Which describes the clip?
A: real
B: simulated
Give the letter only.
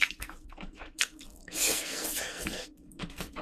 B